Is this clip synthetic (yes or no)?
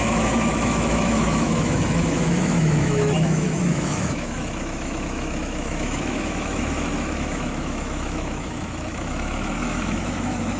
yes